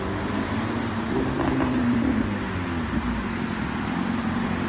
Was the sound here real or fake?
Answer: real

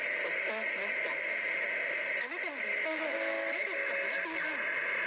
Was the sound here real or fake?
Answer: real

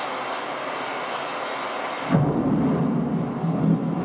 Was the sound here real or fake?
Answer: real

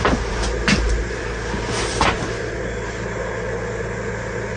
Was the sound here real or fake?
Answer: real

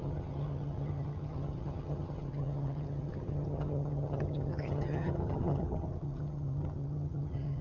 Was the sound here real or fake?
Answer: fake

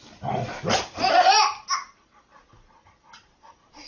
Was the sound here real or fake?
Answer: real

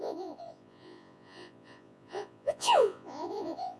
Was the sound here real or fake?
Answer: fake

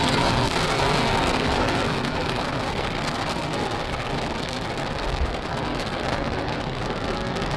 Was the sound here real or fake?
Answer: fake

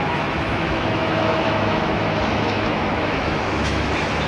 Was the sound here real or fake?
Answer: fake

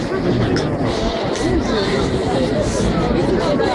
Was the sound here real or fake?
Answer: real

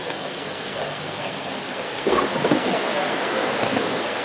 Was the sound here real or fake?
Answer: fake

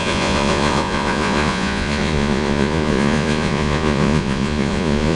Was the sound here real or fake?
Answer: fake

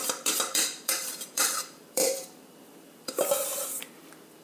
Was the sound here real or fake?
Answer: fake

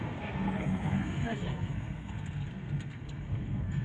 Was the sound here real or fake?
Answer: fake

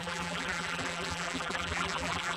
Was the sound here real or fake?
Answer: fake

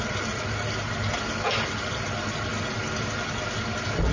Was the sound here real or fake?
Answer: real